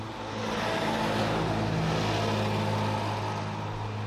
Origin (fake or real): real